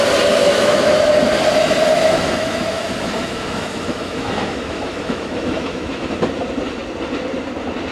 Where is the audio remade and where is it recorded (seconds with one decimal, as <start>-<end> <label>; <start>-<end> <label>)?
0.0-0.4 recorded; 0.4-1.0 remade; 1.0-1.9 recorded; 1.9-6.1 remade; 6.1-7.9 recorded